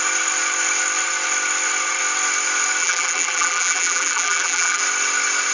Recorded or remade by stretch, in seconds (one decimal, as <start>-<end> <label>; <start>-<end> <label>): 0.0-2.8 recorded; 2.8-4.8 remade; 4.8-5.5 recorded